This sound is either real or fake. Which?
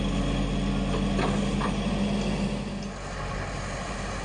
real